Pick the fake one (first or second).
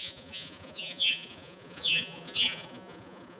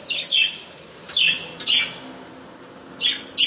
first